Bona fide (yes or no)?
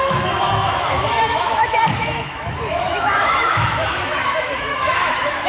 no